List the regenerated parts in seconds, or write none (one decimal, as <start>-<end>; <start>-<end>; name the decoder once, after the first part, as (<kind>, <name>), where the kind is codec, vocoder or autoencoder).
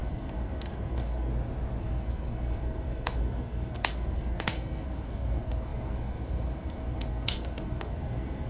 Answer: 0.0-1.3 (codec, SNAC); 1.8-8.5